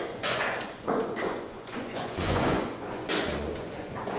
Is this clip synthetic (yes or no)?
yes